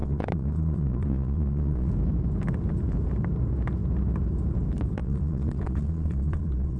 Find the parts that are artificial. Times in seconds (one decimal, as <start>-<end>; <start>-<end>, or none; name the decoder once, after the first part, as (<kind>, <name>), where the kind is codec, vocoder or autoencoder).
0.0-1.9 (vocoder, Vocos); 5.0-6.8